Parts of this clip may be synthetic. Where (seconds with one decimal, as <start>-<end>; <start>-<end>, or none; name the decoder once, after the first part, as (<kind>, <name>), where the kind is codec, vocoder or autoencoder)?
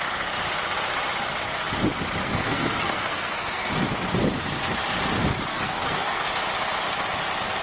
2.2-3.7 (codec, SNAC); 5.5-6.3